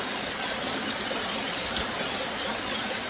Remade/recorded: recorded